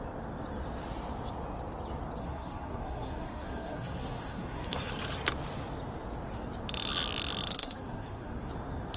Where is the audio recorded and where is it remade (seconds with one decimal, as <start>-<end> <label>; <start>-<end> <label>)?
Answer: 0.0-2.2 recorded; 2.2-4.9 remade; 4.9-7.5 recorded; 7.5-8.5 remade; 8.5-9.0 recorded